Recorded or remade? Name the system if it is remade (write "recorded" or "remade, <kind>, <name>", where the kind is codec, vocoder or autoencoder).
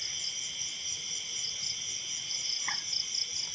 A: recorded